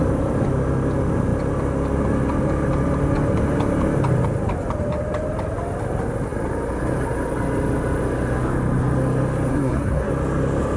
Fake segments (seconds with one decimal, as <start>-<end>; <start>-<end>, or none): 9.5-10.1